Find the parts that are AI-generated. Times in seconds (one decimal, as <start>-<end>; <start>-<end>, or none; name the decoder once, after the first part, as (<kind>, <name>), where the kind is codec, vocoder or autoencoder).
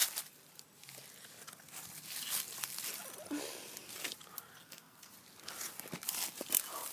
4.6-5.1 (codec, SNAC)